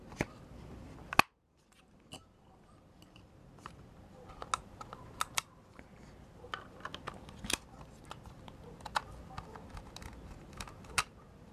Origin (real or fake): real